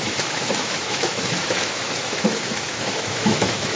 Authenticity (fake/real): fake